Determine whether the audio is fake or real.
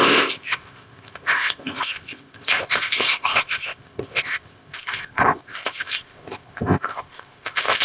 fake